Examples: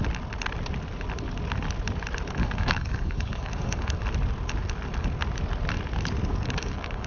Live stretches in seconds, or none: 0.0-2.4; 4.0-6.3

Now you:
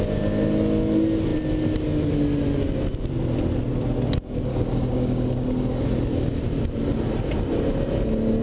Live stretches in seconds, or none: 0.0-4.5; 6.4-8.4